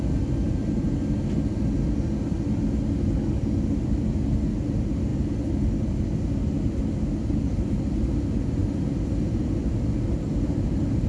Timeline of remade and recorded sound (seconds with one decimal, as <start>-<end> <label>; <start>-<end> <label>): 0.0-11.1 recorded